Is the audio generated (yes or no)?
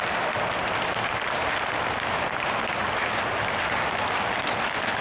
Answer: no